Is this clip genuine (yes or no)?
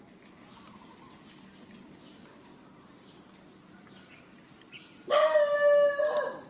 yes